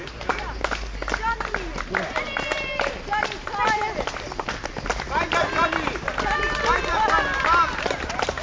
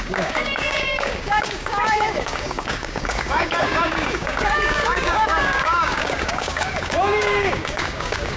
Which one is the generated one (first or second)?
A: second